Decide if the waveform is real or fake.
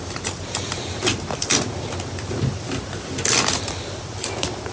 real